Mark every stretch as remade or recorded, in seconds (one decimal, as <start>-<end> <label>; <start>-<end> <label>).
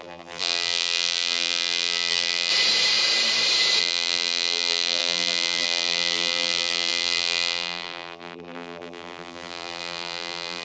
0.0-2.5 remade; 2.5-3.8 recorded; 3.8-10.6 remade